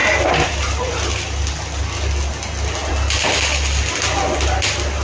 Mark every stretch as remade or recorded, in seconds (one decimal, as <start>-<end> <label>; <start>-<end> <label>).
0.0-1.8 remade; 1.8-2.8 recorded; 2.8-3.8 remade; 3.8-5.0 recorded